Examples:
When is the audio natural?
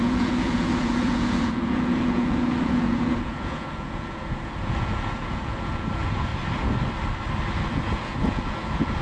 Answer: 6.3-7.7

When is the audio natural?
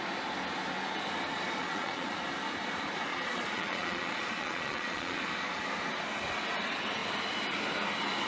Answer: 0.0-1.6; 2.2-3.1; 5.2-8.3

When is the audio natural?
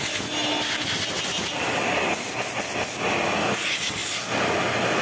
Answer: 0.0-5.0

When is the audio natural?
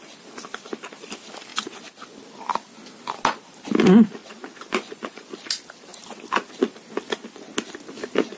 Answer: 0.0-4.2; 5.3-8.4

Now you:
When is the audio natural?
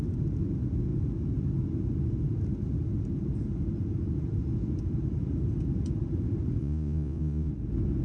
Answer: 0.0-6.6; 7.5-8.0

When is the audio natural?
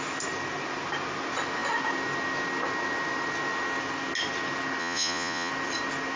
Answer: 0.0-4.8; 5.5-6.2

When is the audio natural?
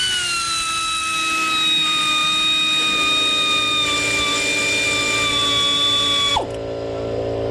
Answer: 0.0-7.5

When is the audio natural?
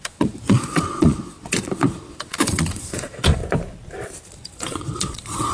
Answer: 3.4-4.3